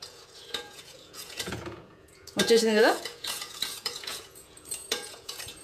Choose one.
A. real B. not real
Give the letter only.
B